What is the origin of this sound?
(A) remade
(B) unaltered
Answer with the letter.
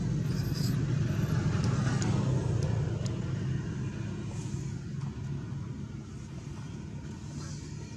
B